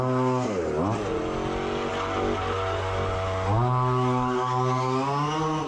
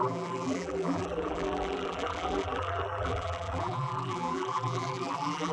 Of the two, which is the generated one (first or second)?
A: second